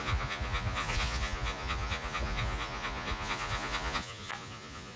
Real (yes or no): no